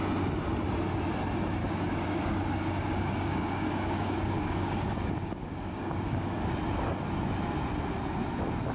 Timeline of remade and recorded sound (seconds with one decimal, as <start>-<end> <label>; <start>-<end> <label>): 0.0-1.6 recorded; 1.6-6.5 remade; 6.5-8.7 recorded